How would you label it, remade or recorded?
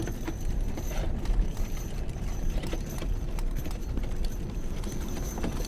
remade